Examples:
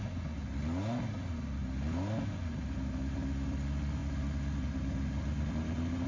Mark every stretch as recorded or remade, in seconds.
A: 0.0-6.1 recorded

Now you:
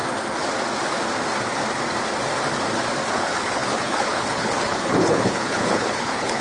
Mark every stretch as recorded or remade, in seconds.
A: 0.0-3.1 recorded; 3.1-6.4 remade

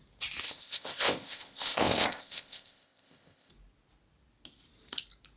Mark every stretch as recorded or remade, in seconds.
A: 0.0-0.4 recorded; 0.4-3.5 remade; 3.5-5.4 recorded